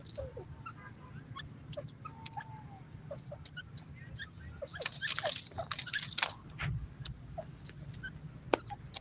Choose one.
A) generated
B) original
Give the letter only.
B